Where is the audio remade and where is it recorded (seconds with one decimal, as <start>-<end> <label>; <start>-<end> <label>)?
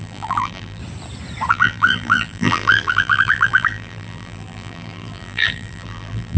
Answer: 0.0-0.8 remade; 0.8-1.5 recorded; 1.5-6.4 remade